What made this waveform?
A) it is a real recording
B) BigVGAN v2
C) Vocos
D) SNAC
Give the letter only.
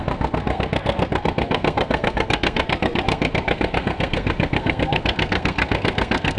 D